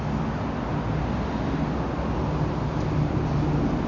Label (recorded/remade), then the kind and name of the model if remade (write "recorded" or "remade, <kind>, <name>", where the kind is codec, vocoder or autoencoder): recorded